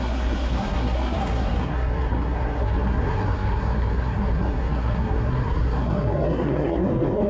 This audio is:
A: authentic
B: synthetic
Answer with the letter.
B